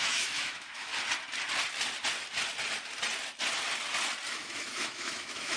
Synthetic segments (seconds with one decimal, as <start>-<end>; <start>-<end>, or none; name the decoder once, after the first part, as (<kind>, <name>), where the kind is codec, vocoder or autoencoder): 0.0-0.9 (autoencoder, DAC-VAE); 4.3-5.6